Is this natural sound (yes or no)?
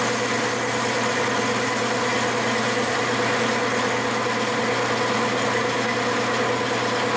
yes